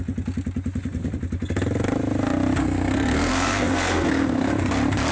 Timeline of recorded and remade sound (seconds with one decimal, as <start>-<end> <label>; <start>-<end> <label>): 0.0-2.6 recorded; 2.6-4.5 remade; 4.5-5.1 recorded